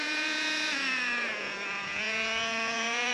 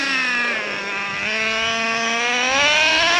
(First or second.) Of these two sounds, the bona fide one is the second